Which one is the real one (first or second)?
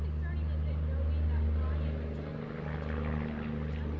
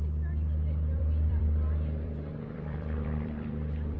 first